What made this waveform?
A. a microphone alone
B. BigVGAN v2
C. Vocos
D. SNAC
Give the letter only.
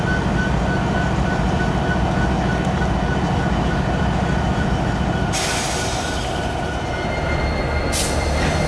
A